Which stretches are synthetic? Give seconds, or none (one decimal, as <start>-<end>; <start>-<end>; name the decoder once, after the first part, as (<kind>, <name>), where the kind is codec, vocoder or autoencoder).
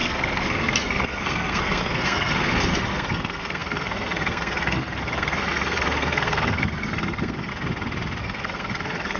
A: 0.0-7.5 (codec, SNAC); 8.2-9.2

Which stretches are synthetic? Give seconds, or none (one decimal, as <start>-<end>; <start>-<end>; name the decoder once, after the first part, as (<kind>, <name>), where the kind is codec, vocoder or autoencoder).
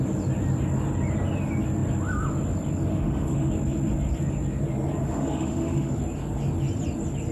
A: 2.9-3.5 (autoencoder, DAC-VAE); 5.0-5.9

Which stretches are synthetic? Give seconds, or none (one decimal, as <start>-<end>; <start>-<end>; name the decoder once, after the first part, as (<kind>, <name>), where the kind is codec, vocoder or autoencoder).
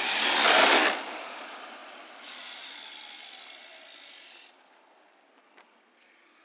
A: 0.0-6.4 (vocoder, BigVGAN v2)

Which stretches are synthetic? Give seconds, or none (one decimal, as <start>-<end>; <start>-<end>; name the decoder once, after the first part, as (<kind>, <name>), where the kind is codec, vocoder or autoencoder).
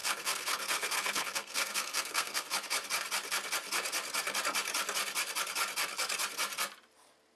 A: 0.0-2.5 (codec, SNAC)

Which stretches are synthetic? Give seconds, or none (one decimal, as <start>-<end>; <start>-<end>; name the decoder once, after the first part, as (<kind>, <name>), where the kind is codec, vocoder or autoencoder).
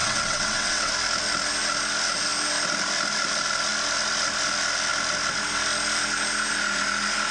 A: 0.0-0.9 (vocoder, WaveNeXt)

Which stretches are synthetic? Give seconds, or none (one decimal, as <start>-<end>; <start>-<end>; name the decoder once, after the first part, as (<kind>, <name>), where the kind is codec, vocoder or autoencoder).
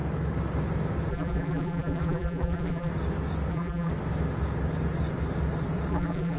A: 1.1-2.9 (vocoder, BigVGAN v2); 3.5-3.9; 5.9-6.4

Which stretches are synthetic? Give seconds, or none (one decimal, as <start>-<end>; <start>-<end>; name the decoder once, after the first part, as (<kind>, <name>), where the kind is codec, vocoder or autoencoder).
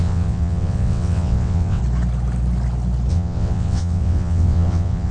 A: 0.0-1.8 (vocoder, WaveNeXt); 3.1-5.1